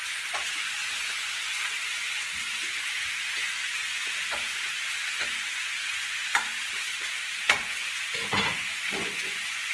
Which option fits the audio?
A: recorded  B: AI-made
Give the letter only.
B